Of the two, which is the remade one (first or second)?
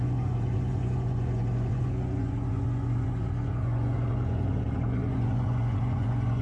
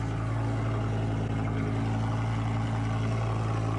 first